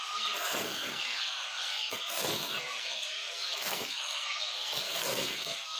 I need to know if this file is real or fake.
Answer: fake